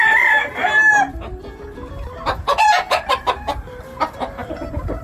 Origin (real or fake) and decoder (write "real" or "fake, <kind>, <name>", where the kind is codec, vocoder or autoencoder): fake, vocoder, BigVGAN v2